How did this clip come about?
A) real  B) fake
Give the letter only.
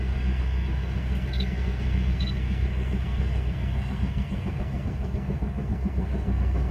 B